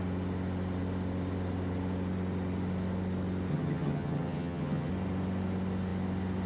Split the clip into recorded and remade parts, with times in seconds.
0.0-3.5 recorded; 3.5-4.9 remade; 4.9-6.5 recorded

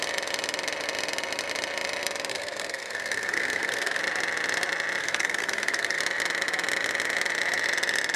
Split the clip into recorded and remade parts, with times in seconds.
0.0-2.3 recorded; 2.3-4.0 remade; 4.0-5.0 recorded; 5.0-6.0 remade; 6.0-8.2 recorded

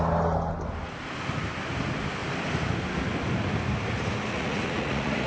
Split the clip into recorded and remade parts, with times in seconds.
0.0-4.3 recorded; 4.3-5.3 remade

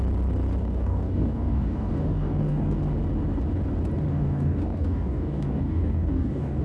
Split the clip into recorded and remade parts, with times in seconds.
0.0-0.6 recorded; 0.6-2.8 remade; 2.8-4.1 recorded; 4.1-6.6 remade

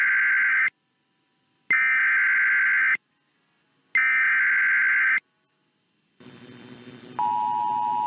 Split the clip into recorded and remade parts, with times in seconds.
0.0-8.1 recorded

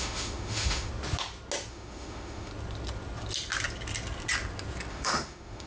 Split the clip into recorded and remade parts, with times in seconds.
0.0-0.9 remade; 0.9-1.7 recorded; 1.7-2.5 remade; 2.5-4.9 recorded; 4.9-5.7 remade

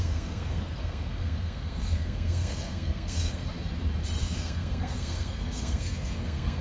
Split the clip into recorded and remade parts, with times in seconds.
0.0-3.4 remade; 3.4-4.2 recorded; 4.2-6.6 remade